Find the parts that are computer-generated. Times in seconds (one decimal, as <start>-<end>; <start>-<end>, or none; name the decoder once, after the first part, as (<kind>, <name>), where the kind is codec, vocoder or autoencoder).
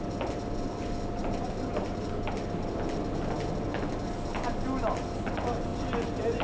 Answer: none